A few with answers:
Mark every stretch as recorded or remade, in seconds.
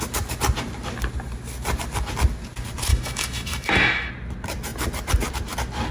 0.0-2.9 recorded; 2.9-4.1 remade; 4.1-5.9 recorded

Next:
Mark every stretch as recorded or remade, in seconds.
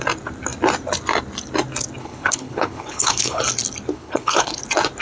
0.0-2.0 recorded; 2.0-3.4 remade; 3.4-3.9 recorded; 3.9-4.6 remade; 4.6-5.0 recorded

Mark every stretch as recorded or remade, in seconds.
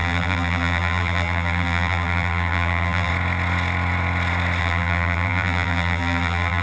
0.0-3.1 remade; 3.1-4.6 recorded; 4.6-6.6 remade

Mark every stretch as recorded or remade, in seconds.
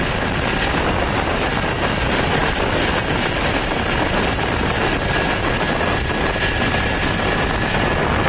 0.0-8.3 recorded